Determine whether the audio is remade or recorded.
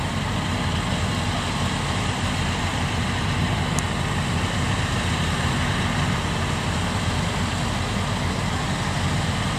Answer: recorded